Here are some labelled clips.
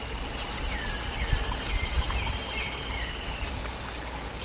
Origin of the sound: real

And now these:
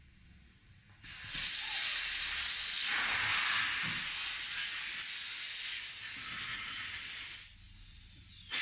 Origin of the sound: real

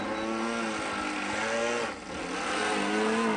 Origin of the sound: real